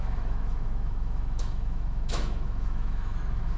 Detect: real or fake fake